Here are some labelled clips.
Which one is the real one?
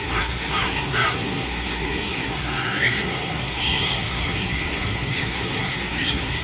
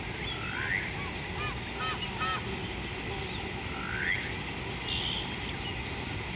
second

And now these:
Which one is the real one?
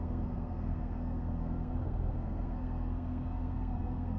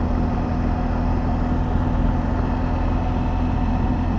second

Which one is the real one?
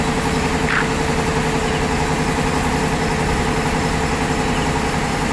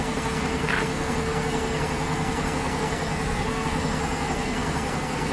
first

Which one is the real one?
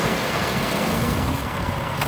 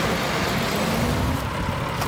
second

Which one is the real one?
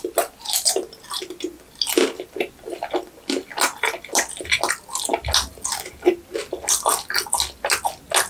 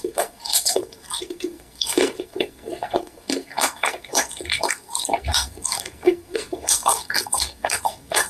first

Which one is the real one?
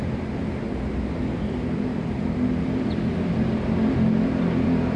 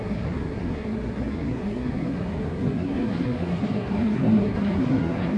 first